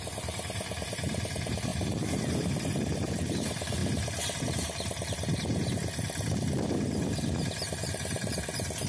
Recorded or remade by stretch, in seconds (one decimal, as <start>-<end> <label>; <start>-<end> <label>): 0.0-3.8 remade; 3.8-4.4 recorded; 4.4-8.9 remade